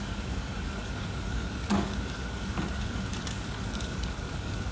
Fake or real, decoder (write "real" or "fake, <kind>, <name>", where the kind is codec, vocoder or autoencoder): fake, codec, DAC